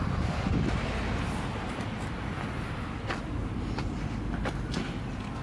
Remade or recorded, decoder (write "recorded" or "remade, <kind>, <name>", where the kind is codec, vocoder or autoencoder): recorded